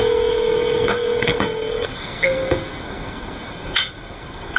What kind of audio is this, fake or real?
fake